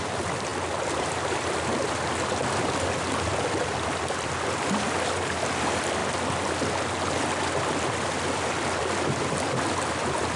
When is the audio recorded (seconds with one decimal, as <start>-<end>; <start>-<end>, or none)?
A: 0.5-1.0; 6.0-7.6